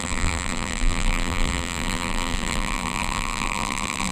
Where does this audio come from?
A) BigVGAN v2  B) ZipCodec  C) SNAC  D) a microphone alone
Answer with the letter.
A